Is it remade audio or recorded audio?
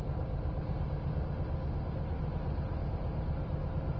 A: recorded